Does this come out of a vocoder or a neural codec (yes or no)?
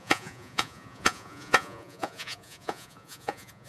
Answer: yes